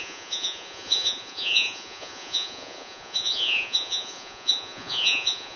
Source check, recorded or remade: remade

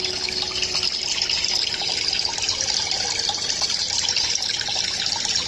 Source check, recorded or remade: recorded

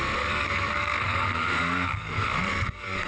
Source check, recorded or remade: remade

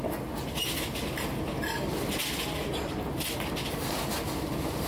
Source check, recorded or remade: recorded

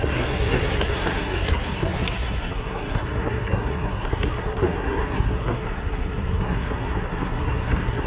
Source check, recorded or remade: remade